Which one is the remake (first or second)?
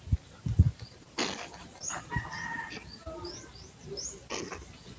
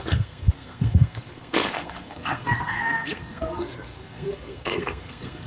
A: second